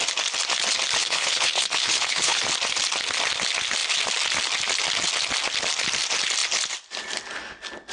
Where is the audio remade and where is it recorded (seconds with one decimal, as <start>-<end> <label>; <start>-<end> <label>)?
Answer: 0.0-1.0 recorded; 1.0-2.4 remade; 2.4-7.9 recorded